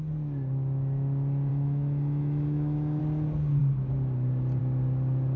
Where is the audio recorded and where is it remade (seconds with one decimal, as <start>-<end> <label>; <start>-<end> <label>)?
0.0-1.5 recorded; 1.5-3.0 remade; 3.0-5.4 recorded